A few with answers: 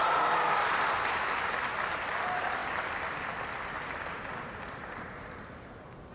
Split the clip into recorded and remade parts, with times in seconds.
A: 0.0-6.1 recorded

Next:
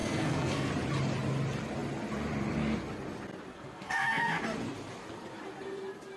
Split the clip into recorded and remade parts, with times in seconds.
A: 0.0-0.7 remade; 0.7-3.5 recorded; 3.5-4.4 remade; 4.4-6.2 recorded

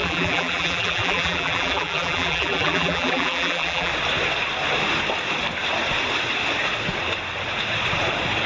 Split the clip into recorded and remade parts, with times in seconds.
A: 0.0-3.9 remade; 3.9-8.5 recorded

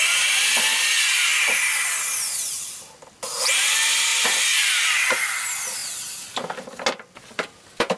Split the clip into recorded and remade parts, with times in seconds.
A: 0.0-8.0 recorded